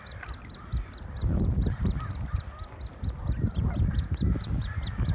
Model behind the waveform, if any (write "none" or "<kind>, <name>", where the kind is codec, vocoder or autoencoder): none